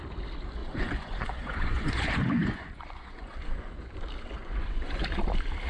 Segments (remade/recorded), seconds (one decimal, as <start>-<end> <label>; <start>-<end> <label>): 0.0-0.6 recorded; 0.6-4.0 remade; 4.0-4.4 recorded; 4.4-5.0 remade; 5.0-5.7 recorded